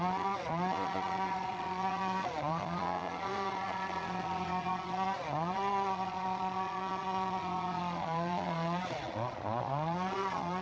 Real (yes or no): no